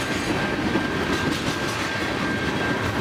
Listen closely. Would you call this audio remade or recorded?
recorded